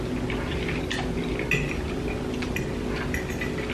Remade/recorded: recorded